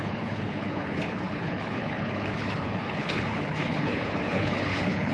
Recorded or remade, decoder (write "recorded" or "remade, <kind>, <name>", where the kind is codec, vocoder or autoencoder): remade, codec, HILCodec